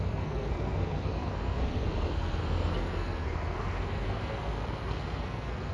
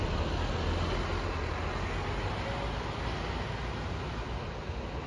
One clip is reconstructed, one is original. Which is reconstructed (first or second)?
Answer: first